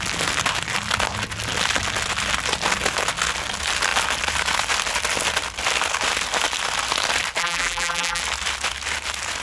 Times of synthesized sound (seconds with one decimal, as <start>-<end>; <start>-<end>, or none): 7.4-8.2